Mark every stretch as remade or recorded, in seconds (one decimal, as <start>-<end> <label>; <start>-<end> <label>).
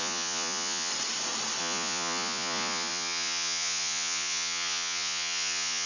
0.0-0.9 remade; 0.9-1.6 recorded; 1.6-5.9 remade